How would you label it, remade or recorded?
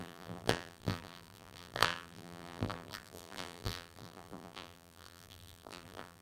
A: remade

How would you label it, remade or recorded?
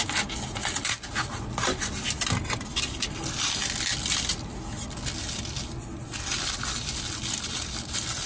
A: recorded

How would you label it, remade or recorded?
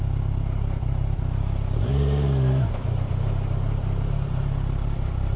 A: remade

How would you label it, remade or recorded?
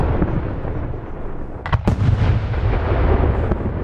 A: recorded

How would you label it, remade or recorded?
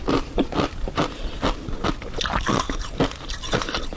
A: recorded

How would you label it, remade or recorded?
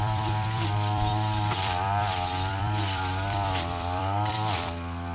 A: remade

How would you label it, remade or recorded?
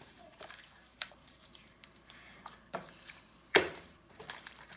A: remade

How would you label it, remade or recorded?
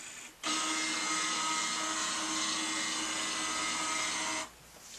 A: recorded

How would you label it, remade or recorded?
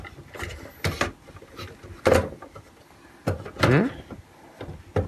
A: recorded